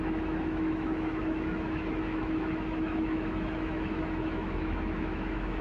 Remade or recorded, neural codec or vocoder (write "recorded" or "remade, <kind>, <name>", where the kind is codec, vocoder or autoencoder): remade, autoencoder, DAC-VAE